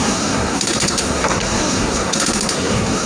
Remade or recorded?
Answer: remade